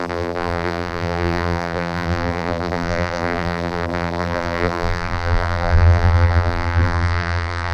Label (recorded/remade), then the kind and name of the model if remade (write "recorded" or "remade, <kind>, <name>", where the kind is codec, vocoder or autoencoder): remade, vocoder, BigVGAN v2